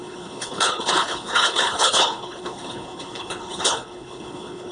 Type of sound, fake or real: fake